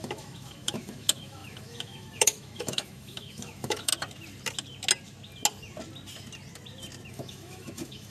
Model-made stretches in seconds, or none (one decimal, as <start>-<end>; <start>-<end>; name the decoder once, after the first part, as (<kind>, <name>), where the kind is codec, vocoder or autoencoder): 0.0-3.9 (autoencoder, DAC-VAE); 7.1-8.1